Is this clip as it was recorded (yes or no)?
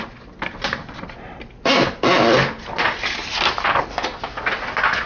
yes